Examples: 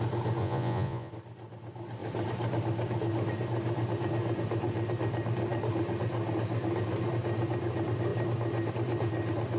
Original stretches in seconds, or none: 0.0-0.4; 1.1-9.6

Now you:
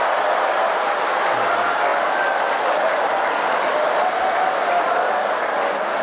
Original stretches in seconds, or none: 0.0-6.0

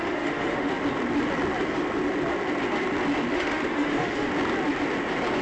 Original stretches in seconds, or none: 0.7-3.3; 4.3-5.4

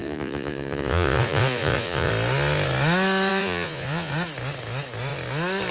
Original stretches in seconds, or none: 2.1-3.3; 4.1-5.7

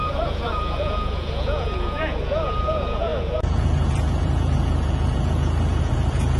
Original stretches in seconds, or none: none